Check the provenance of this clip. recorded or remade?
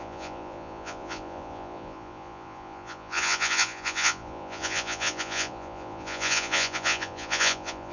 remade